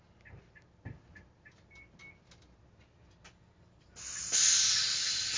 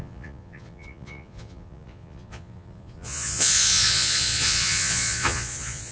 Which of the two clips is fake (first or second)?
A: second